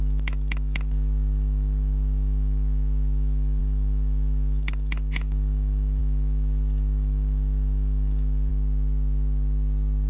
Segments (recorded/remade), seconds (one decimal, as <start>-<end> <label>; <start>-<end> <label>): 0.0-8.5 remade; 8.5-10.1 recorded